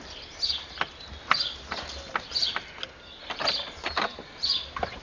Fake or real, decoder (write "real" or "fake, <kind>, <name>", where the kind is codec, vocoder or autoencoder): real